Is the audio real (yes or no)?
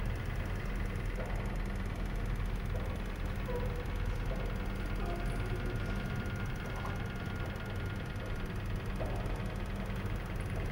yes